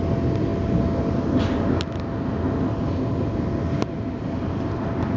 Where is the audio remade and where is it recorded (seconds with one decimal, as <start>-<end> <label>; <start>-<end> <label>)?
0.0-5.2 recorded